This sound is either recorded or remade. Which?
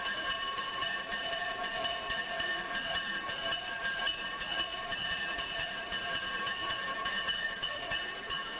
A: remade